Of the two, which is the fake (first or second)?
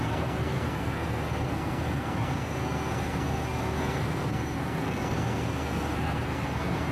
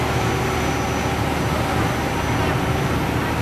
first